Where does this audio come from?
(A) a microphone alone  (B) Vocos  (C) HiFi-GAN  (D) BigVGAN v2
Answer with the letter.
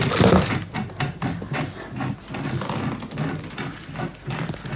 A